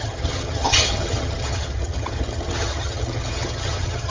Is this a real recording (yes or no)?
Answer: no